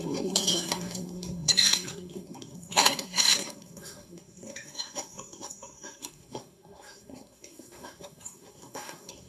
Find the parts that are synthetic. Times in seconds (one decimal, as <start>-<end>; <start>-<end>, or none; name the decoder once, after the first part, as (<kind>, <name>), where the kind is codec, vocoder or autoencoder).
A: 0.0-9.3 (codec, SNAC)